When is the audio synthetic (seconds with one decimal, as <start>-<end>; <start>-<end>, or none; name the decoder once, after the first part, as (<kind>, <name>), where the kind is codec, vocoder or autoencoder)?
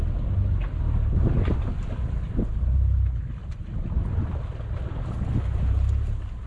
none